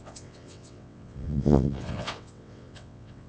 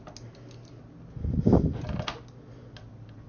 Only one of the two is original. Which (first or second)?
second